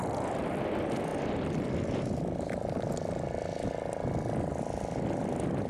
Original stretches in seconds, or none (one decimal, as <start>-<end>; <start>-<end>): 0.0-5.7